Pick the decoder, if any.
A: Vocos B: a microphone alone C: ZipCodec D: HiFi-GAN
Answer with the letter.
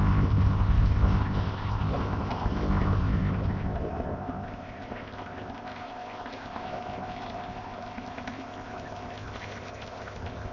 C